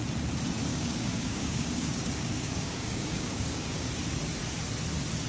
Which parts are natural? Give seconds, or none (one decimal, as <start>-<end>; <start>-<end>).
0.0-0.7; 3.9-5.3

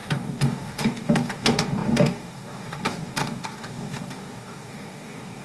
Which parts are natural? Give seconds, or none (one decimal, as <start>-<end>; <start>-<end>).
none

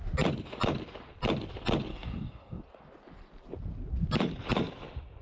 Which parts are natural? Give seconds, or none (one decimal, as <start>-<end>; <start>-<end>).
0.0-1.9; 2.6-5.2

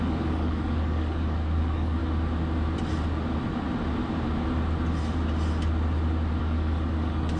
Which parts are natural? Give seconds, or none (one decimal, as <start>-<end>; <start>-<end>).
2.0-6.4

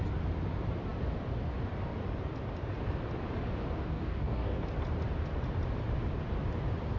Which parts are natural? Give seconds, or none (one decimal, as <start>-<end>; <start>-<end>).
0.0-3.8; 4.6-7.0